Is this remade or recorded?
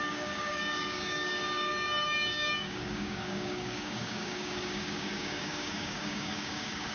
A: remade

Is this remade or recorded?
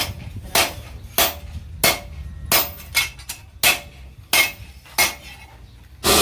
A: recorded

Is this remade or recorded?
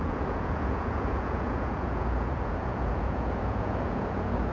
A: remade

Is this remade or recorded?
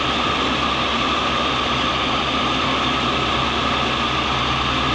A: recorded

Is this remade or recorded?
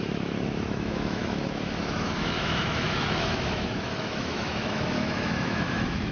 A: remade